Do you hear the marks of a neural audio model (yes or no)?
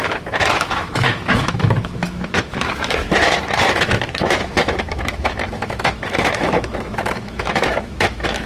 yes